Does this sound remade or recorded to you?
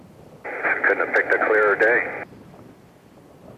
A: recorded